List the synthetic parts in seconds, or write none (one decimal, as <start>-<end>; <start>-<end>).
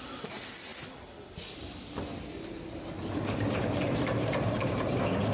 none